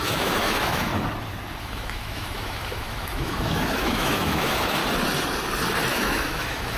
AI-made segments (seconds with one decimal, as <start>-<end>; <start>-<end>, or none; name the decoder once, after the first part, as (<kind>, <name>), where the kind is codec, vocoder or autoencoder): 0.0-0.9 (autoencoder, DAC-VAE); 1.6-4.8; 5.9-6.8